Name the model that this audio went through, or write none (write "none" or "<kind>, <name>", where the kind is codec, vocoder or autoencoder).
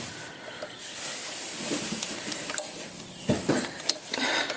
none